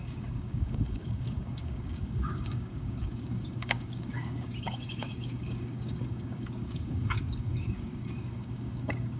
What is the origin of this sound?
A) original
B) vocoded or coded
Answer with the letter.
B